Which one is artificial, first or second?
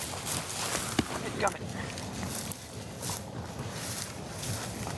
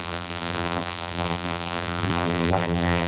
second